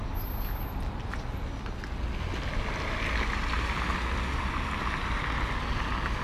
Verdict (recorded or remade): recorded